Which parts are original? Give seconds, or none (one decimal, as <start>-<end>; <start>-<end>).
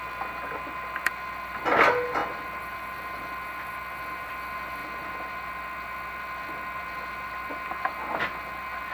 0.0-8.9